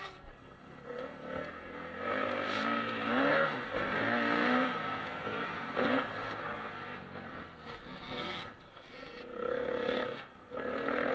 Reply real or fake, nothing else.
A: fake